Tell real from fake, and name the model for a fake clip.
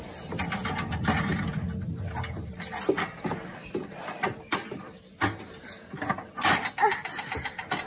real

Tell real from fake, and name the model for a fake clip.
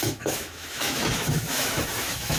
fake, autoencoder, DAC-VAE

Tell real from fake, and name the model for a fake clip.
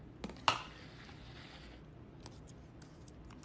real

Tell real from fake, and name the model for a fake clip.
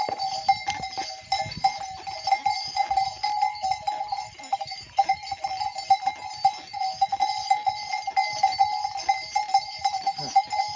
real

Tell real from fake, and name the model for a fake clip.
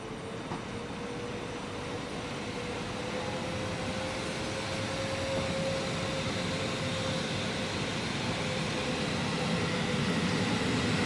real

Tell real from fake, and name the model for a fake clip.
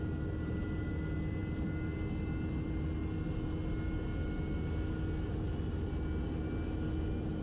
real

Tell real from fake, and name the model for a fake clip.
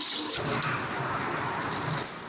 real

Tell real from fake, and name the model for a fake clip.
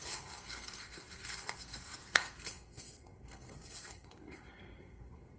fake, codec, SNAC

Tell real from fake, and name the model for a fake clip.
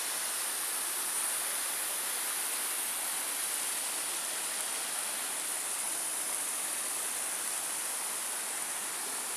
real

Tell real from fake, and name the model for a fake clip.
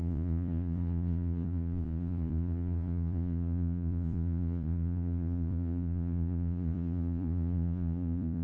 fake, vocoder, Vocos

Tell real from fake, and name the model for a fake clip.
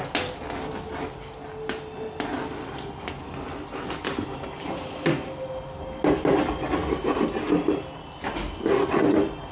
real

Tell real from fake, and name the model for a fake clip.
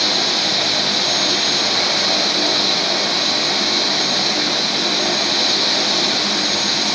real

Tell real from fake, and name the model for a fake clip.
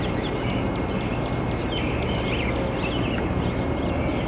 real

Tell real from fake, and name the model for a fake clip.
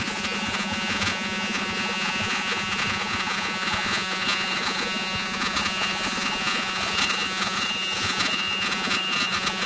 fake, vocoder, Vocos